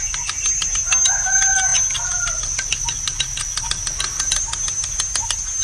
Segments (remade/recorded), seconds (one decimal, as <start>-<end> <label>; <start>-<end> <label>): 0.0-5.6 recorded